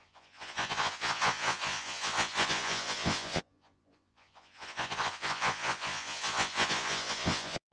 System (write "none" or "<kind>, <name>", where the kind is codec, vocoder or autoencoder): vocoder, Vocos